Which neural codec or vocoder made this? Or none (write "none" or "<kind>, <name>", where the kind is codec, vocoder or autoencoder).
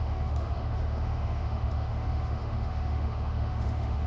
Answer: autoencoder, DAC-VAE